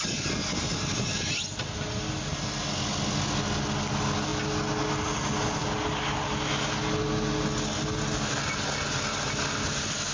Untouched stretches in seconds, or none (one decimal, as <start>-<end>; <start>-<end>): 0.0-10.1